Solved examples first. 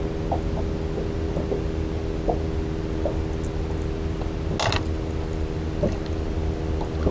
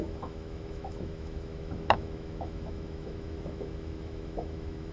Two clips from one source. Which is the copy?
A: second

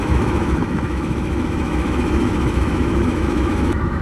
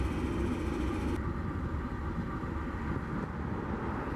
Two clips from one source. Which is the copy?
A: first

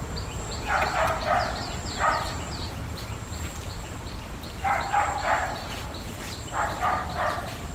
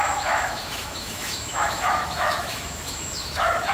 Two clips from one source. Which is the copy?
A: second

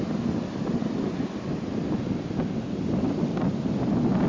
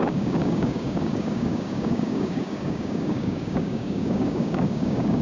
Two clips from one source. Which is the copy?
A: second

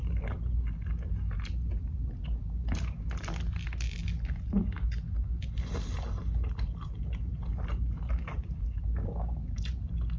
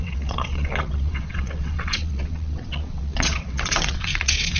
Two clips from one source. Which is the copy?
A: second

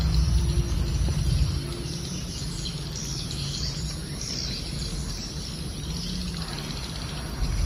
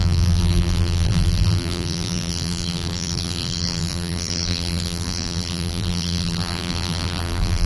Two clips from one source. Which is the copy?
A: second